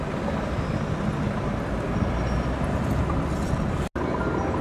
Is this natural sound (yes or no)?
yes